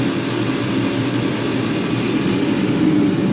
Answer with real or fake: real